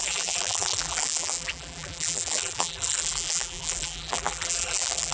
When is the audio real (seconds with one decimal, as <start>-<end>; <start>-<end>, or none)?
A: none